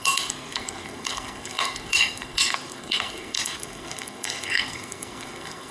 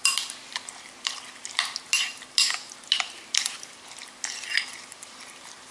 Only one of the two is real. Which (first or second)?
second